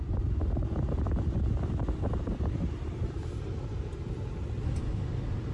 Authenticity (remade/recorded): recorded